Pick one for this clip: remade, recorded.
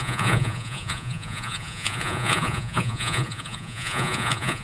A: remade